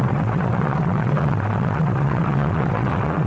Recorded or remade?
remade